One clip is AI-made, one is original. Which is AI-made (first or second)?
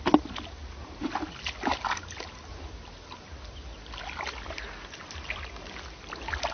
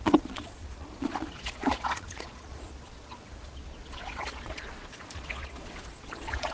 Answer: second